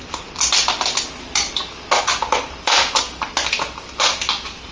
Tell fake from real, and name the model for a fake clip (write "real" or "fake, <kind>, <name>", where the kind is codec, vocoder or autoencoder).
fake, vocoder, BigVGAN v2